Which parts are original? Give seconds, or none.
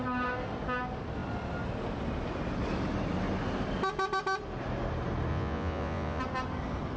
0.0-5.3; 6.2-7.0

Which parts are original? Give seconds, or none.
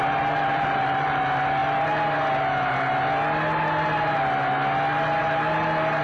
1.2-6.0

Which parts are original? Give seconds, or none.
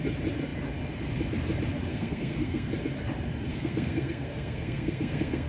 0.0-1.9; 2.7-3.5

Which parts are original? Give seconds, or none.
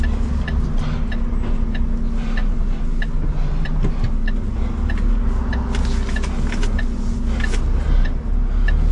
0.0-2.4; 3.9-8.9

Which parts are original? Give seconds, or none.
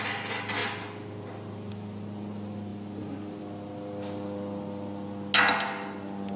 0.0-6.4